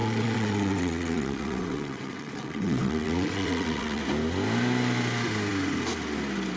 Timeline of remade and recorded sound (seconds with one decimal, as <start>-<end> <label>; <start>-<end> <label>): 0.0-4.0 remade; 4.0-6.6 recorded